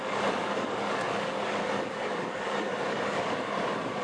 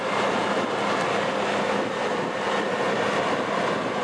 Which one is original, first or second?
second